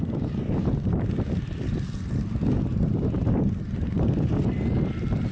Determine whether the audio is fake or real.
real